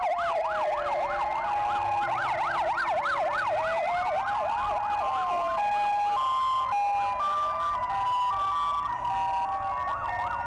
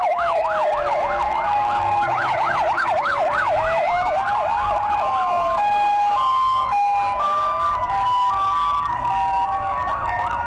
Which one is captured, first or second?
first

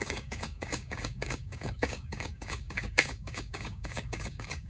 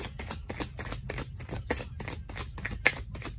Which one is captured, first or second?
second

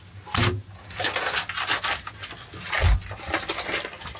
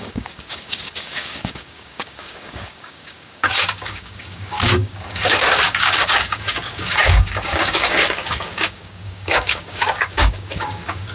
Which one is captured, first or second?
first